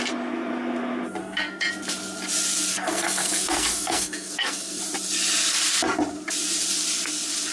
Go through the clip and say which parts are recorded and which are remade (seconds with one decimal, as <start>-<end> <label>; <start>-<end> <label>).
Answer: 0.0-1.2 recorded; 1.2-1.7 remade; 1.7-2.7 recorded; 2.7-4.8 remade; 4.8-7.5 recorded